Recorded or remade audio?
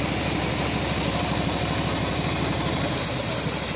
recorded